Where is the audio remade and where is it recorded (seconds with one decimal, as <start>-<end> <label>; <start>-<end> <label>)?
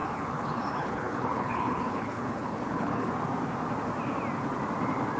0.0-3.1 remade; 3.1-5.2 recorded